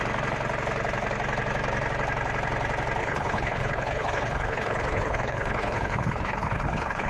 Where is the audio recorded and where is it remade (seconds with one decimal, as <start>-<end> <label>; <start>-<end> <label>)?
0.0-3.0 recorded; 3.0-7.1 remade